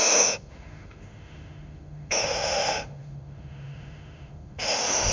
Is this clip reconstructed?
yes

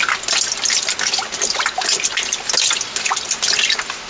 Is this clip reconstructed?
no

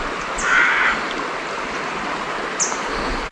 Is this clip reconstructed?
no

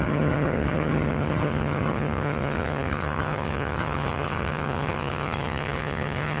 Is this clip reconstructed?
yes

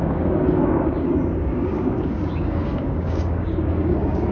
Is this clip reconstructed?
yes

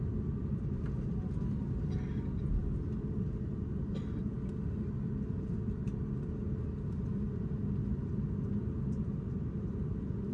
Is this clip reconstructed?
no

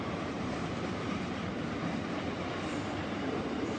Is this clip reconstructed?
yes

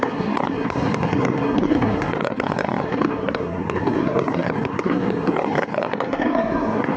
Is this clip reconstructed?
yes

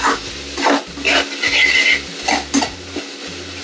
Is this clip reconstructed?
no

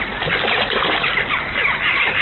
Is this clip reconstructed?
no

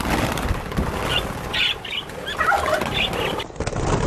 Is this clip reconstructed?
no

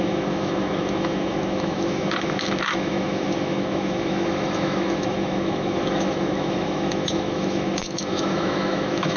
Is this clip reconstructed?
yes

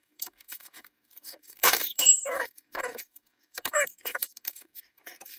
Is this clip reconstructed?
yes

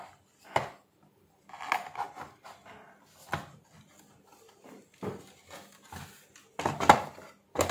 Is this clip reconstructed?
no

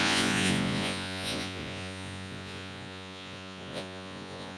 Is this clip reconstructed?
yes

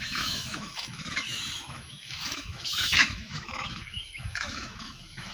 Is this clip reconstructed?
yes